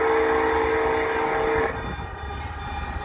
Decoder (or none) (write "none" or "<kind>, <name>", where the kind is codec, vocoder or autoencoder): none